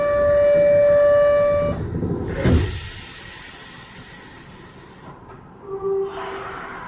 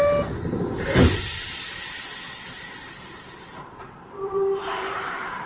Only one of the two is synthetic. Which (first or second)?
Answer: second